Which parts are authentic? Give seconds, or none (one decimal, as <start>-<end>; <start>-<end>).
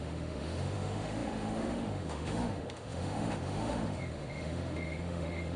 none